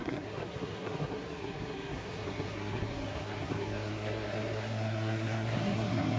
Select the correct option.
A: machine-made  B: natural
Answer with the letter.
A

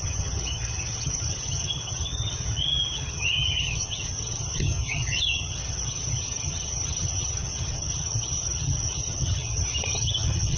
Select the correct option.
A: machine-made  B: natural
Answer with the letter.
A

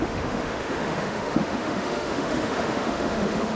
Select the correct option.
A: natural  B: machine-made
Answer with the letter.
B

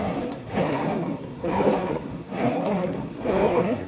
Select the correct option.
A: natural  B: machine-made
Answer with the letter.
B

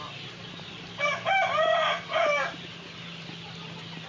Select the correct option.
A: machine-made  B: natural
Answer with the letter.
B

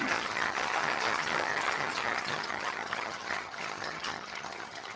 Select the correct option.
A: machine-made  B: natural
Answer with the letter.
A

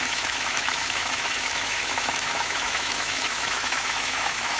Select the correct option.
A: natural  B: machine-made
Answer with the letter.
B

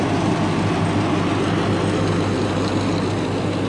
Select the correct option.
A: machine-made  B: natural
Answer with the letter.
B